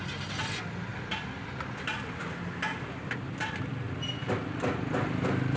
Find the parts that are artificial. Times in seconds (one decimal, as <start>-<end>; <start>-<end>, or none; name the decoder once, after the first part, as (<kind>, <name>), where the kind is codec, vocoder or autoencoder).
none

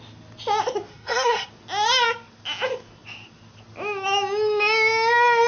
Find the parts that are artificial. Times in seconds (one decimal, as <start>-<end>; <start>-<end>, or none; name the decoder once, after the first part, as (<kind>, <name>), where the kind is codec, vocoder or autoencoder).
0.9-1.5 (codec, SNAC)

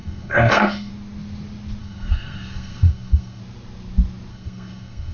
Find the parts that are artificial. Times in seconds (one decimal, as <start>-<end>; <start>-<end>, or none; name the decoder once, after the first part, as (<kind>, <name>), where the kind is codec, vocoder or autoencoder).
0.0-0.9 (codec, SNAC); 1.8-3.4; 4.3-5.1

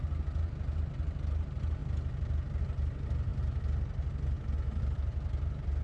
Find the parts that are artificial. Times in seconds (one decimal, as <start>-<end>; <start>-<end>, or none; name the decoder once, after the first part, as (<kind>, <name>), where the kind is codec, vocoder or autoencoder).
none

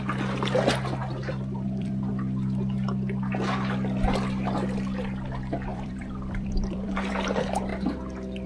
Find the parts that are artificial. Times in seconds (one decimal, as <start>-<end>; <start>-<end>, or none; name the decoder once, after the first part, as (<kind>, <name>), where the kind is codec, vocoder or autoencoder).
1.0-2.1 (vocoder, BigVGAN v2); 5.7-7.1

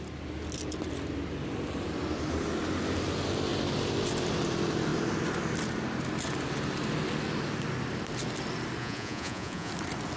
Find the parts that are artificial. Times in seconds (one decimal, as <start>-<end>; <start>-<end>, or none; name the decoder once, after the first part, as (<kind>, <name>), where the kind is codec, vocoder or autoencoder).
8.8-9.7 (vocoder, Vocos)

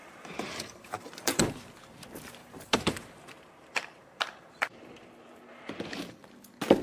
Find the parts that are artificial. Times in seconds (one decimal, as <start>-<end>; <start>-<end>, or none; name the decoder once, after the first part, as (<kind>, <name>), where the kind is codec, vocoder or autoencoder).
0.0-1.4 (vocoder, BigVGAN v2); 2.4-5.7

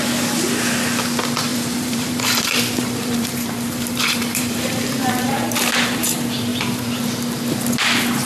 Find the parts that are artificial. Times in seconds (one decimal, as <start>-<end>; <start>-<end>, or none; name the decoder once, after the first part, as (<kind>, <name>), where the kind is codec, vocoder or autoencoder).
1.5-5.4 (vocoder, BigVGAN v2); 6.5-7.0